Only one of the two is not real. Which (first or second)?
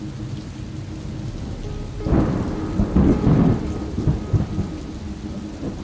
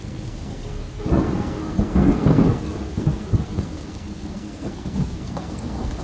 second